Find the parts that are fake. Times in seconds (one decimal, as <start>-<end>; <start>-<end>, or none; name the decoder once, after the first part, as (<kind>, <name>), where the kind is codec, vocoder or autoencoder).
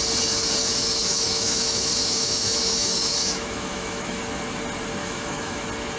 0.6-4.2 (autoencoder, DAC-VAE); 5.0-5.6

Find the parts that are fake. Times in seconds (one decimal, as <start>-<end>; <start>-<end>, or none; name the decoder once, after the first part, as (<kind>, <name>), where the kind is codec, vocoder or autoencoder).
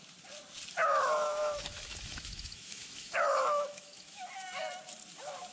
0.9-4.2 (autoencoder, DAC-VAE)